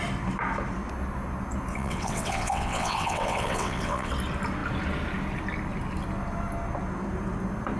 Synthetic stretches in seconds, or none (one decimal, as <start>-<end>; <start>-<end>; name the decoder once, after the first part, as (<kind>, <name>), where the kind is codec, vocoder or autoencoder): 1.7-4.1 (vocoder, WaveNeXt)